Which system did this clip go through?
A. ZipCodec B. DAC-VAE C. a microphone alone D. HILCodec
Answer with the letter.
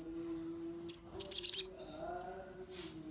C